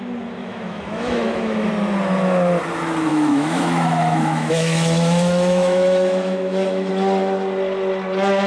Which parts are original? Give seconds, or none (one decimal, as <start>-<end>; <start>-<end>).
0.0-0.4; 1.7-3.1; 6.9-8.5

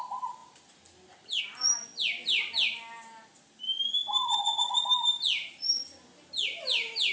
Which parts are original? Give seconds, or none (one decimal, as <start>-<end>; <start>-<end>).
0.0-7.1

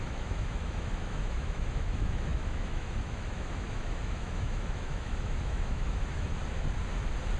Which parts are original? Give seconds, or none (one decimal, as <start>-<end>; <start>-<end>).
6.4-7.4